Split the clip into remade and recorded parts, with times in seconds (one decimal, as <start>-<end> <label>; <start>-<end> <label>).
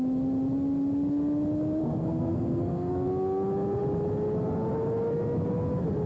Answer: 0.0-1.8 recorded; 1.8-3.1 remade; 3.1-6.1 recorded